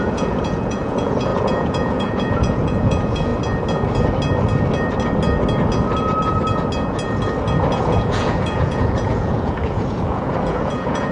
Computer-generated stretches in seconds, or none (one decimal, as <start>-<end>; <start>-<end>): 0.0-3.3; 7.8-11.1